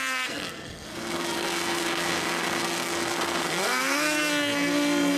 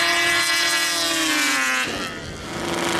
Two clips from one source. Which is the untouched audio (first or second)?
second